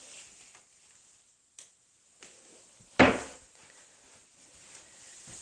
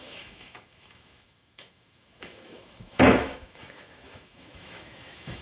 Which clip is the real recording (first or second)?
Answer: first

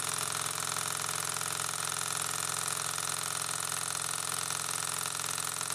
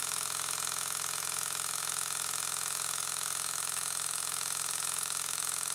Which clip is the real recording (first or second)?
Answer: first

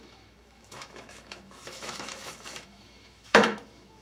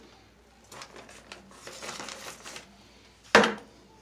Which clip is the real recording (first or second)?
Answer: second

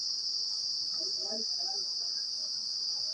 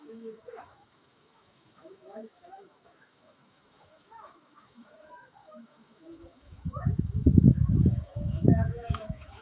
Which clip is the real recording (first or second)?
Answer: first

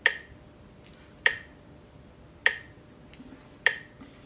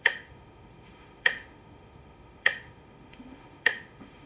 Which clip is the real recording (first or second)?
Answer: first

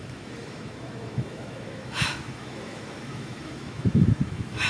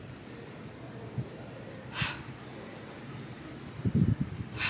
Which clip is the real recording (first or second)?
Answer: second